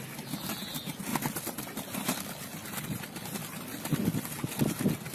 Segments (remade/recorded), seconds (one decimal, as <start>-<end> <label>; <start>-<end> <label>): 0.0-5.1 recorded